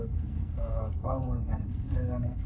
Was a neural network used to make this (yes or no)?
yes